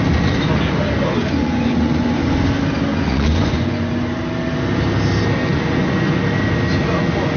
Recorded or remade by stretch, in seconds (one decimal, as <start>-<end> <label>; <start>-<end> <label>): 0.0-1.4 recorded; 1.4-2.2 remade; 2.2-2.9 recorded; 2.9-3.9 remade; 3.9-5.4 recorded; 5.4-6.2 remade; 6.2-7.4 recorded